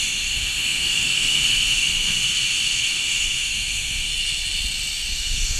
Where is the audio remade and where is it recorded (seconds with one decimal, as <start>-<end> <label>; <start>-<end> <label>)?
0.0-4.1 remade; 4.1-5.1 recorded; 5.1-5.6 remade